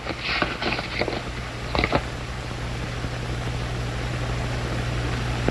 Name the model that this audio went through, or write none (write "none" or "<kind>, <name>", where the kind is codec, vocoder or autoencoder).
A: none